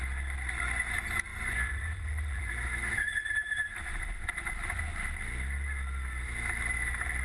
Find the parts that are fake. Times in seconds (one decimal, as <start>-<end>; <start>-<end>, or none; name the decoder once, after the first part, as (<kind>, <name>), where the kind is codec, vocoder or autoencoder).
1.3-4.8 (vocoder, Vocos)